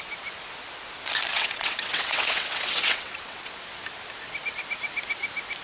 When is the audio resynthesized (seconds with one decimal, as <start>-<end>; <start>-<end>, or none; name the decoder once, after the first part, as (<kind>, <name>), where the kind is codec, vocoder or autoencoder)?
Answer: 1.3-3.5 (vocoder, WaveNeXt)

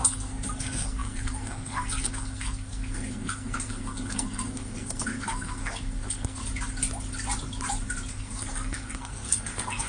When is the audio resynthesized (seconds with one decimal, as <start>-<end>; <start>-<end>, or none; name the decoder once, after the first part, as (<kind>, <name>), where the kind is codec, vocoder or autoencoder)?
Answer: 0.0-6.4 (codec, SNAC); 8.1-9.9

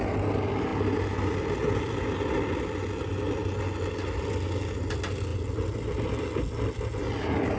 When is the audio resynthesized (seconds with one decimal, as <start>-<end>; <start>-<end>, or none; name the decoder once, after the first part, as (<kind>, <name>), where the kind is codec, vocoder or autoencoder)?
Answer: none

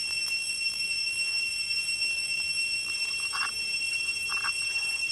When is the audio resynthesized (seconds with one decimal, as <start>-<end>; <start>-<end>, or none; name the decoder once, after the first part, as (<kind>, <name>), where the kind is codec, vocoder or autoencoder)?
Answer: 0.0-2.9 (vocoder, BigVGAN v2)

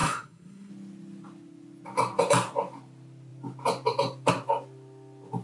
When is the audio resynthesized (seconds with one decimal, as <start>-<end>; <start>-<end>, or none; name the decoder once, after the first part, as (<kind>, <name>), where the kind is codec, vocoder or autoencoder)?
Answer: 0.0-0.7 (codec, SNAC)

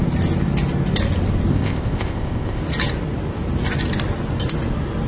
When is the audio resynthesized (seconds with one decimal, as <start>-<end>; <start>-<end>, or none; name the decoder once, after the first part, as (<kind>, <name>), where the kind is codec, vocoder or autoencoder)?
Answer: 1.5-2.6 (codec, ZipCodec)

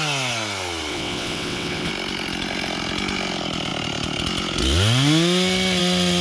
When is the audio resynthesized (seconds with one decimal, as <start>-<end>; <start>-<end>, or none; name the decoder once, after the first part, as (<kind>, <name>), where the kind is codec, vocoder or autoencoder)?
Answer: 0.9-1.9 (vocoder, WaveNeXt)

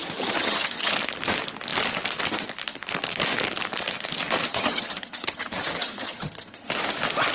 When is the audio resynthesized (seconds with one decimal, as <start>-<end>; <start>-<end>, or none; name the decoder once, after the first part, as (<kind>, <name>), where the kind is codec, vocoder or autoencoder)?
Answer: 0.0-0.9 (vocoder, HiFi-GAN); 4.5-6.7